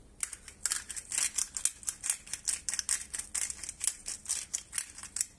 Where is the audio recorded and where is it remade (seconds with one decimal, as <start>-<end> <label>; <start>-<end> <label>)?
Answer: 0.0-5.4 recorded